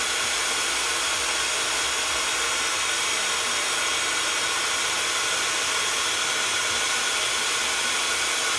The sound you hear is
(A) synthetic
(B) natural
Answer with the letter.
B